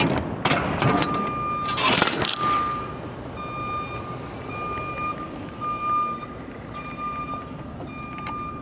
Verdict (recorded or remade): recorded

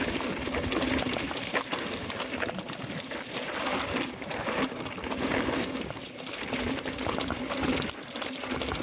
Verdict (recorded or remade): recorded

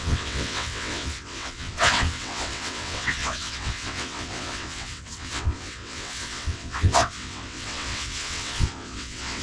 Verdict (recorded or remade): remade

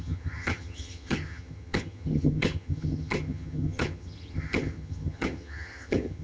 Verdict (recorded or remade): remade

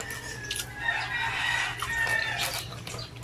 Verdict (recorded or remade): recorded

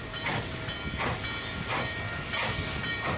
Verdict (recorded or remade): recorded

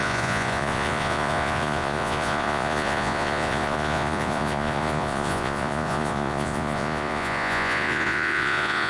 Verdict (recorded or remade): remade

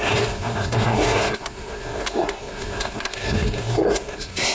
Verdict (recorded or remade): remade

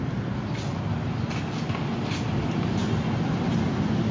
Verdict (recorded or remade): recorded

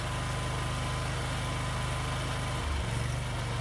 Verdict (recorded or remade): recorded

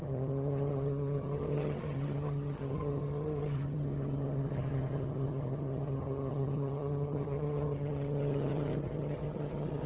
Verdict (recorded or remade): remade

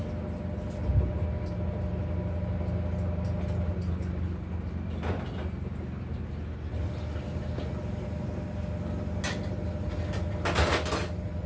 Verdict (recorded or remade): recorded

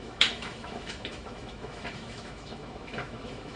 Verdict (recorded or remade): remade